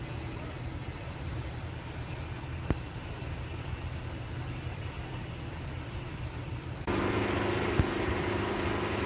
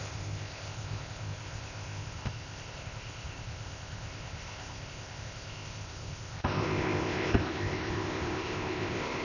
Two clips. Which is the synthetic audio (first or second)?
second